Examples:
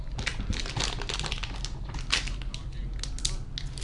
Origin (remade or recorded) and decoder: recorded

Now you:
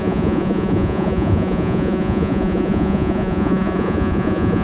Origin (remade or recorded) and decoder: remade, vocoder, Vocos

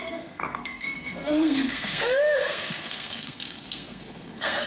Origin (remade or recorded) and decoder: remade, codec, SNAC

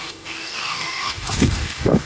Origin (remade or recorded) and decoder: remade, codec, DAC